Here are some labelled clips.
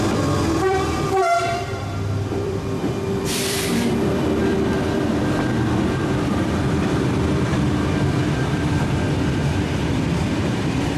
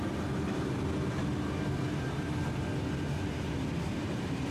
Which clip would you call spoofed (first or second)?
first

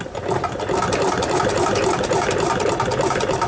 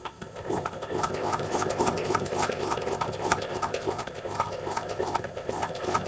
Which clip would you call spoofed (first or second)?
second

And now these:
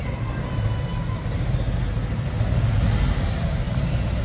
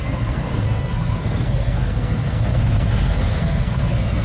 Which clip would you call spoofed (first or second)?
second